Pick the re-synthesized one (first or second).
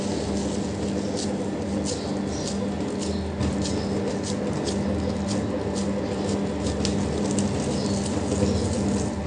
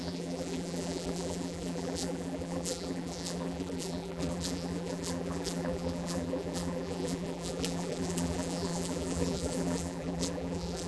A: second